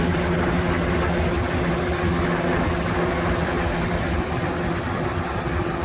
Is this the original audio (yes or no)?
yes